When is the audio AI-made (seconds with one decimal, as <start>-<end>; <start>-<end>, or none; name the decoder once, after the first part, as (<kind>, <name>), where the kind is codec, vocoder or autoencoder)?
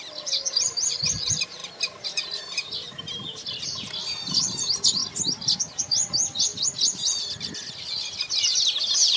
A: none